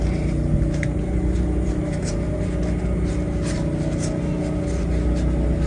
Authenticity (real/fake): real